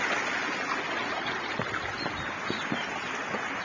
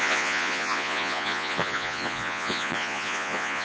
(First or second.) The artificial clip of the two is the second